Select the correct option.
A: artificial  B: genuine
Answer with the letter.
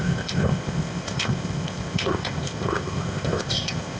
A